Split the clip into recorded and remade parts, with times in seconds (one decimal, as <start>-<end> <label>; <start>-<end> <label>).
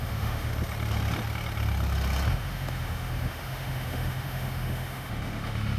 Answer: 0.0-0.5 remade; 0.5-2.3 recorded; 2.3-5.8 remade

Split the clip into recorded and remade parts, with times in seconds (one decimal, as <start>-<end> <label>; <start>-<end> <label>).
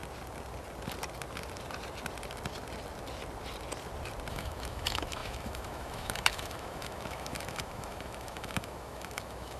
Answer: 0.0-4.3 recorded; 4.3-9.6 remade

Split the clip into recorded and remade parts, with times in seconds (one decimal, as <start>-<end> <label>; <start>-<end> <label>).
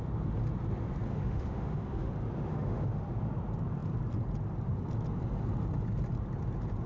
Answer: 0.0-1.1 recorded; 1.1-2.1 remade; 2.1-2.5 recorded; 2.5-3.0 remade; 3.0-6.9 recorded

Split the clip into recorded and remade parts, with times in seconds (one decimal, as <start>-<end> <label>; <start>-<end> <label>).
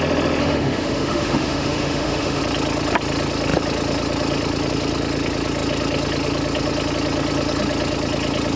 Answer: 0.0-0.4 recorded; 0.4-2.4 remade; 2.4-8.6 recorded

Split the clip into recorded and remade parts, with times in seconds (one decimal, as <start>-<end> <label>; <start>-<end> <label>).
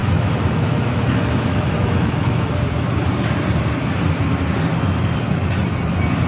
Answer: 0.0-2.5 remade; 2.5-6.3 recorded